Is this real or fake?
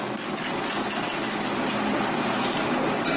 real